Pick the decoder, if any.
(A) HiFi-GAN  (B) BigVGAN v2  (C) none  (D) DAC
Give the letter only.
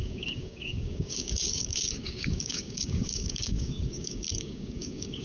D